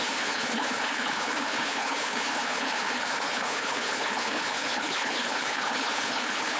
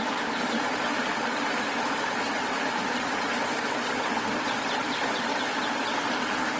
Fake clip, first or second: first